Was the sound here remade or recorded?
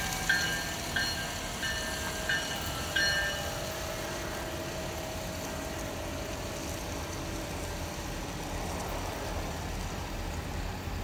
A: recorded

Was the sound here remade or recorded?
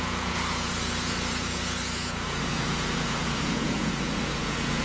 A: remade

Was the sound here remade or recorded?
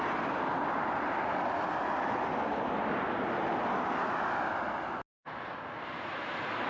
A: recorded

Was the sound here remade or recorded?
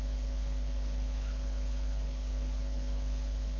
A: remade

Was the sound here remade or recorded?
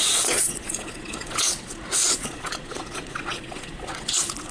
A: remade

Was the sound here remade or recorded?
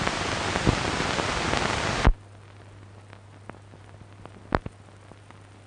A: recorded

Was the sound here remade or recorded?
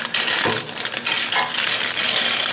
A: recorded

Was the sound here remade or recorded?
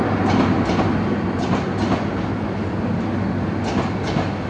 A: recorded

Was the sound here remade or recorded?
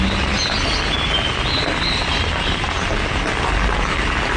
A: recorded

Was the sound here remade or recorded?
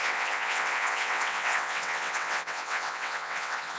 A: remade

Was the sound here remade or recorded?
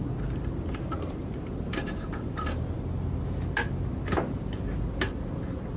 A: recorded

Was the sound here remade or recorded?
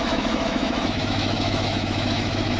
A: remade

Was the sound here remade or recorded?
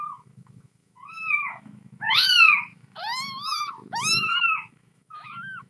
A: remade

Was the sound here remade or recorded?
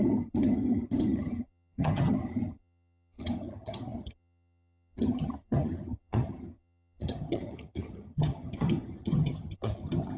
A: remade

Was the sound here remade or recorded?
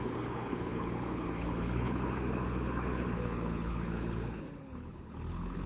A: remade